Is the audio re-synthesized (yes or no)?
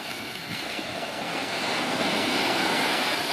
yes